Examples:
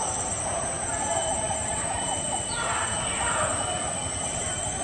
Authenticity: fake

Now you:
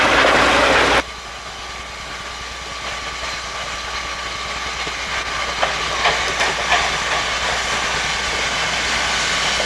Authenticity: real